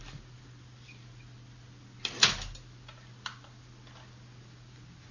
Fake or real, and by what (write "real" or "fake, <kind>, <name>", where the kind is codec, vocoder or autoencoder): real